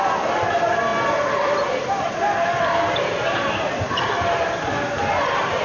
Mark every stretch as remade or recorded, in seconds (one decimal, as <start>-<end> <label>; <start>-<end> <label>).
0.0-5.6 recorded